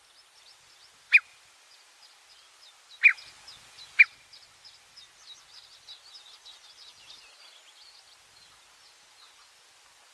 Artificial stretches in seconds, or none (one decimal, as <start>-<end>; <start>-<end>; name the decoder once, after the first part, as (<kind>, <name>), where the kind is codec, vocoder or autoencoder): none